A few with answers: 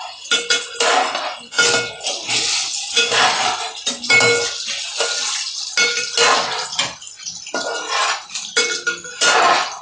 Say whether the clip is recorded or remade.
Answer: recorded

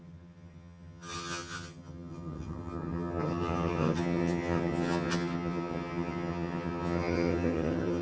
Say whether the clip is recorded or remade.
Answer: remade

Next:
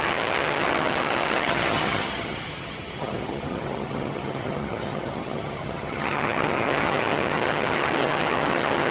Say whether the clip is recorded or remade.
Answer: remade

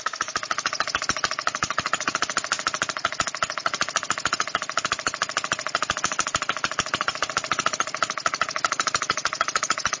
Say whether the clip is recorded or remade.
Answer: recorded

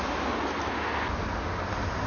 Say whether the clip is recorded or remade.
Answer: recorded